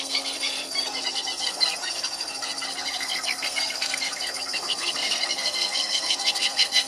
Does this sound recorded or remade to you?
remade